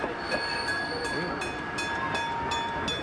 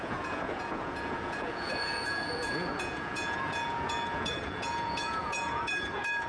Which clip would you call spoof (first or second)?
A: second